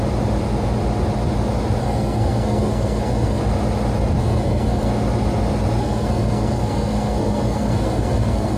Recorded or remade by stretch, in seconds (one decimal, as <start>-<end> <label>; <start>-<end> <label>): 0.0-1.8 recorded; 1.8-3.4 remade; 3.4-4.2 recorded; 4.2-4.9 remade; 4.9-5.8 recorded; 5.8-8.6 remade